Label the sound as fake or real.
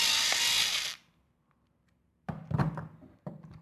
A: real